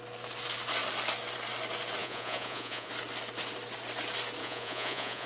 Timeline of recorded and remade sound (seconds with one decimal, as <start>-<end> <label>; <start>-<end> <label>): 0.0-2.0 recorded; 2.0-2.9 remade; 2.9-4.4 recorded; 4.4-5.3 remade